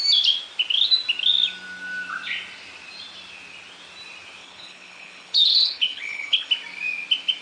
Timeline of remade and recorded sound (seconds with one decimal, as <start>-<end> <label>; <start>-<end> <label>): 0.0-4.4 recorded; 4.4-6.5 remade; 6.5-7.4 recorded